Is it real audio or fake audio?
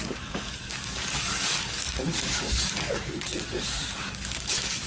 fake